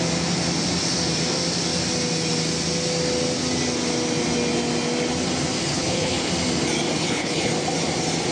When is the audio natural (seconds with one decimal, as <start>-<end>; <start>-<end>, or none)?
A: 0.0-5.6; 6.3-7.0; 7.5-8.3